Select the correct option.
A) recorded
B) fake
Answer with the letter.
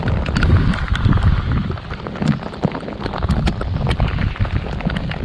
A